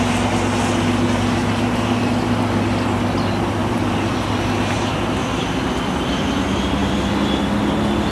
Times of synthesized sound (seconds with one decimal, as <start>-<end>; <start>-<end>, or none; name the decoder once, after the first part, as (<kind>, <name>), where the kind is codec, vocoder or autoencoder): 3.6-6.3 (vocoder, BigVGAN v2)